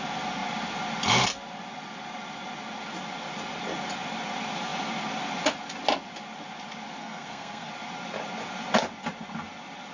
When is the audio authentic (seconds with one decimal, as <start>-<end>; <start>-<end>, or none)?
0.0-7.0; 7.7-9.9